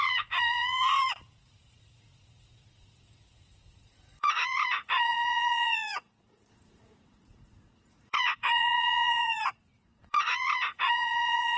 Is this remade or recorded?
remade